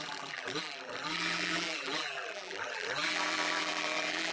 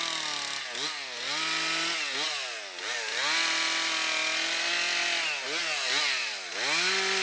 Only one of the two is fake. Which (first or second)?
first